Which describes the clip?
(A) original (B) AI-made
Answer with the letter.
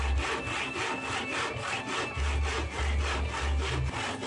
A